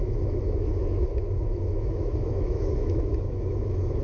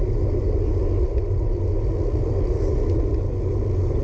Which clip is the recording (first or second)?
second